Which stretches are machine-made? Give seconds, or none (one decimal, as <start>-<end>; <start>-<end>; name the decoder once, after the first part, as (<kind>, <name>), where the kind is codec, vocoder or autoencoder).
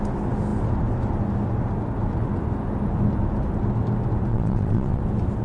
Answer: 4.3-5.0 (vocoder, WaveNeXt)